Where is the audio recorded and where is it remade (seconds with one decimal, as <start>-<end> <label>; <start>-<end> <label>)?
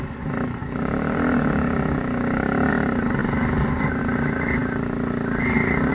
0.0-0.6 recorded; 0.6-2.7 remade; 2.7-5.9 recorded